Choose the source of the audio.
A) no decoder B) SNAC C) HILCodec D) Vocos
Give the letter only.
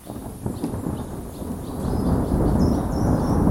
A